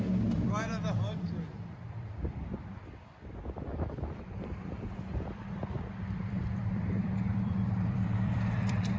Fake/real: fake